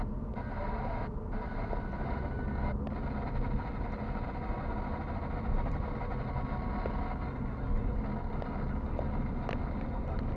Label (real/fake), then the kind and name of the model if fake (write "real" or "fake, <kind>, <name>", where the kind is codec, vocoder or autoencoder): real